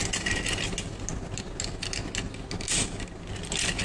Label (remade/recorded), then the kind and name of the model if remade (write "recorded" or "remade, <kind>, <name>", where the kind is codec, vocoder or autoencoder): recorded